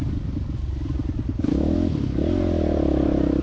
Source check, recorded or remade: recorded